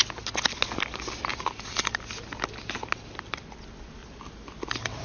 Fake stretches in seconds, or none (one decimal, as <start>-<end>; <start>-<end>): 1.3-2.2; 4.0-5.0